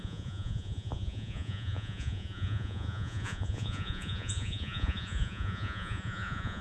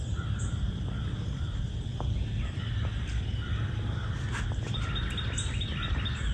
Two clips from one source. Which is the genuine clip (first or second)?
second